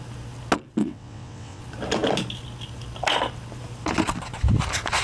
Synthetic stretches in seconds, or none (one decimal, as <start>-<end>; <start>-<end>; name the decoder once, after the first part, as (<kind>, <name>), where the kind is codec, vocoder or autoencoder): 0.8-1.6 (vocoder, WaveNeXt)